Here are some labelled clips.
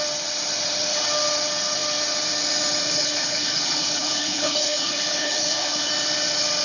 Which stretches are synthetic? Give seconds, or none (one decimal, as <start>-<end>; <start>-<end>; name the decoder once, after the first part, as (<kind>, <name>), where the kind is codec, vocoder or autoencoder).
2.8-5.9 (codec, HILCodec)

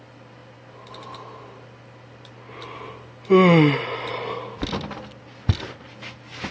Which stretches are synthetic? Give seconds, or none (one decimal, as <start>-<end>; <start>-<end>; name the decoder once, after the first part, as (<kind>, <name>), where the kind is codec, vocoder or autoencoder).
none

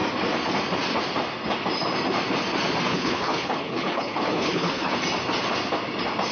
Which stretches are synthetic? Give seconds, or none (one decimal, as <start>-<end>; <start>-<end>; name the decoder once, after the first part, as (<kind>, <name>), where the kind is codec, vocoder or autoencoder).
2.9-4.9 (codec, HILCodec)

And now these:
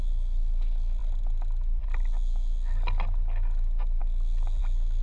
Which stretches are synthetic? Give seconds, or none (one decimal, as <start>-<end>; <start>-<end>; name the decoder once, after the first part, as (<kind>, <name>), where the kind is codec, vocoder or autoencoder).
none

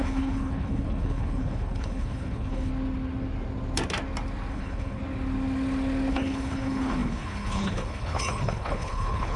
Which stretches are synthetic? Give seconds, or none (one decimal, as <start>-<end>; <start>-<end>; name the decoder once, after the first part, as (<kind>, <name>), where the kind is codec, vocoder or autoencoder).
0.0-2.7 (codec, HILCodec); 4.5-5.0; 6.1-9.4

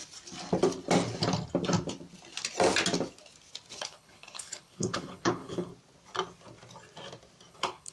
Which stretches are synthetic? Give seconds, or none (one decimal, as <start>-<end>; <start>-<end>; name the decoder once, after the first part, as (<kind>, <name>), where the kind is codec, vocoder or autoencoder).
3.8-5.7 (codec, HILCodec); 7.5-7.9

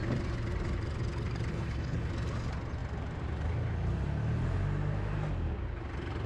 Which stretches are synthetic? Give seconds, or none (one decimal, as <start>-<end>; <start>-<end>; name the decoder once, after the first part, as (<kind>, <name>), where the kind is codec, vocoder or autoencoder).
1.5-2.1 (codec, HILCodec)